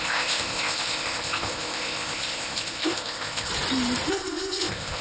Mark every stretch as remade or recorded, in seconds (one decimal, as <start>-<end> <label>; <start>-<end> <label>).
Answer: 0.0-3.5 remade; 3.5-4.1 recorded; 4.1-5.0 remade